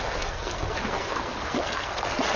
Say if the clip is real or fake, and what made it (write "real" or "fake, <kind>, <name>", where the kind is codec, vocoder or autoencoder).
fake, codec, SNAC